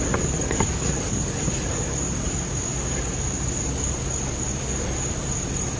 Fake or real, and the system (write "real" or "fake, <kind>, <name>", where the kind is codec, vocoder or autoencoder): real